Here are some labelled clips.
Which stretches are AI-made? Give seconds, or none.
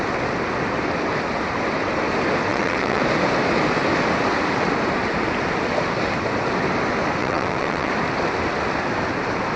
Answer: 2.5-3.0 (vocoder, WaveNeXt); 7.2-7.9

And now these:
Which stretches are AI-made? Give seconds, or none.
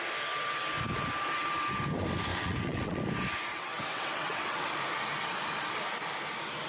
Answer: 2.3-3.0 (vocoder, WaveNeXt); 3.5-4.7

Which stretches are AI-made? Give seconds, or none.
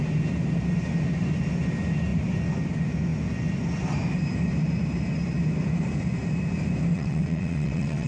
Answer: 6.9-8.1 (vocoder, WaveNeXt)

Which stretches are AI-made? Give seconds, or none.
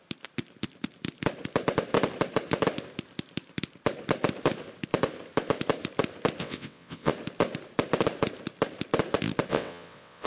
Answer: 6.4-7.1 (vocoder, WaveNeXt); 9.5-10.3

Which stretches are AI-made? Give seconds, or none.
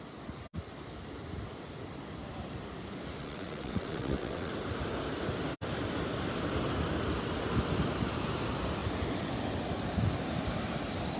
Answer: 3.2-4.5 (vocoder, WaveNeXt)